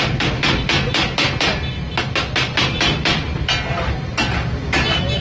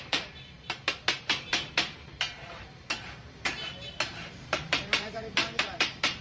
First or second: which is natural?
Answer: first